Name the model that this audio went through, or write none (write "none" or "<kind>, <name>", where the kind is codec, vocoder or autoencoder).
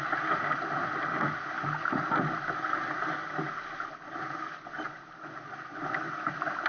none